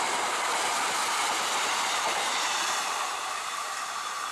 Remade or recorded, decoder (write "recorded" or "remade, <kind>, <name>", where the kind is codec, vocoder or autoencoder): remade, vocoder, BigVGAN v2